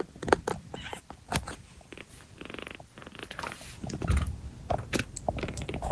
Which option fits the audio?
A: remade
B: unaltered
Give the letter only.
B